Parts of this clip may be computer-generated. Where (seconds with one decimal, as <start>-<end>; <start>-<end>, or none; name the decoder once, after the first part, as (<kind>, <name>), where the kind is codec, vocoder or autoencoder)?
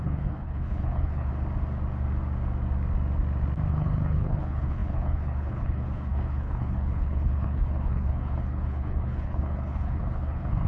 0.0-1.3 (codec, HILCodec); 3.7-10.7